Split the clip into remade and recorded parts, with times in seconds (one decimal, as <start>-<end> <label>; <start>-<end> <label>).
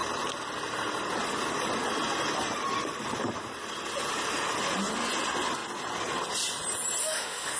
0.0-7.0 recorded; 7.0-7.6 remade